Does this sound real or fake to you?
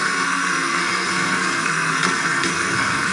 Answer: fake